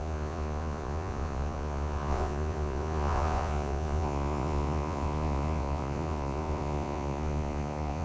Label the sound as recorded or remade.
remade